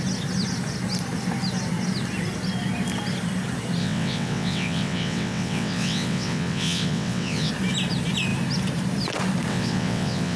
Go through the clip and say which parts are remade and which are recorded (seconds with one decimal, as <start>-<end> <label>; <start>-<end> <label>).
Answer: 0.0-3.8 recorded; 3.8-7.5 remade; 7.5-9.5 recorded; 9.5-10.4 remade